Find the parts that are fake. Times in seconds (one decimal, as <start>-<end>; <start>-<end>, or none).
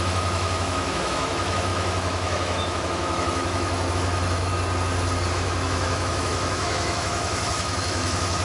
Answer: 0.0-4.5; 5.3-8.4